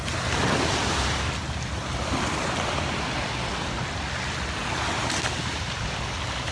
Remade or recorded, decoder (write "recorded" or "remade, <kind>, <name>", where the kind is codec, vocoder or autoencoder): recorded